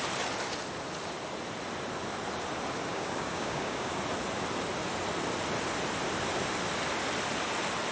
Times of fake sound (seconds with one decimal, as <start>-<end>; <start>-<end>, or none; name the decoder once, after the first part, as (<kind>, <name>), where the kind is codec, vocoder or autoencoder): 2.9-4.0 (codec, DAC)